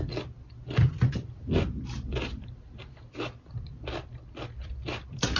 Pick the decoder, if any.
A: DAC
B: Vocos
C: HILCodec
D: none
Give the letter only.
D